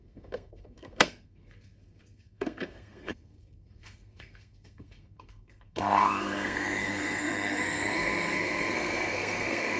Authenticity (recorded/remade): remade